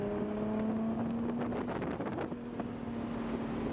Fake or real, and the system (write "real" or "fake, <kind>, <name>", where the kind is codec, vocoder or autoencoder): real